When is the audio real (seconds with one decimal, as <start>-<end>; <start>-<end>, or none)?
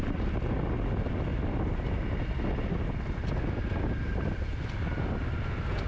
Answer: 0.0-5.9